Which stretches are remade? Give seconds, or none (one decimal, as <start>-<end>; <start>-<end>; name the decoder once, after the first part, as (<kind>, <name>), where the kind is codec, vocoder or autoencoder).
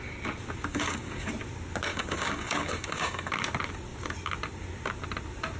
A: 0.7-1.3 (codec, DAC); 1.9-3.3